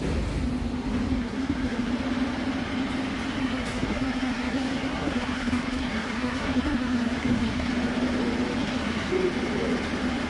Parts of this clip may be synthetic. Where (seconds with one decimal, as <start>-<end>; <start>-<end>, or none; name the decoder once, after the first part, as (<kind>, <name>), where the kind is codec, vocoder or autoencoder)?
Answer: 1.1-1.9 (codec, SNAC); 3.4-7.7; 8.6-9.1